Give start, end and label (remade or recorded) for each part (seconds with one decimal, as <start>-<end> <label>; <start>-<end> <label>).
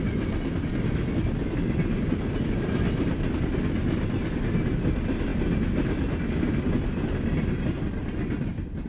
0.0-8.9 recorded